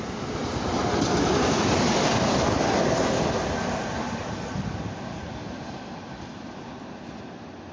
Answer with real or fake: real